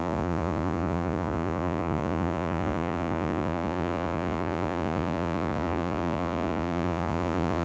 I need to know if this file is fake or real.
fake